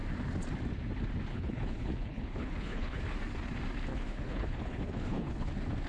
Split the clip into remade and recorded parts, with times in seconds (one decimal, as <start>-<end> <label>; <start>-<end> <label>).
0.0-1.3 recorded; 1.3-3.0 remade; 3.0-3.9 recorded; 3.9-5.5 remade; 5.5-5.9 recorded